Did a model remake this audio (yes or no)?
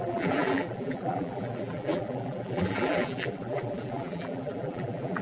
yes